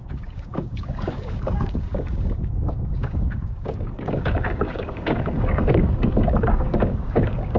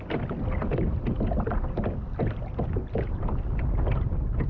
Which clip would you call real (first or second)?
second